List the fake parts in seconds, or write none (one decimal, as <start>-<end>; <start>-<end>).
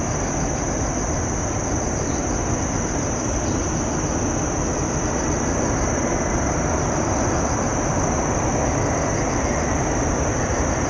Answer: none